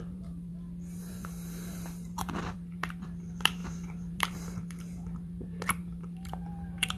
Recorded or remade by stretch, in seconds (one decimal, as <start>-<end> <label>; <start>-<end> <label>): 0.0-0.5 remade; 0.5-1.0 recorded; 1.0-7.0 remade